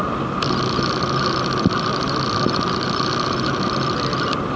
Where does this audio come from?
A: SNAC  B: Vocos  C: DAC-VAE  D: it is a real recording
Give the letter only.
D